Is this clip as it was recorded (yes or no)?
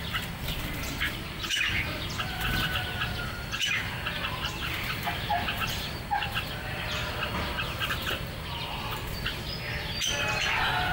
yes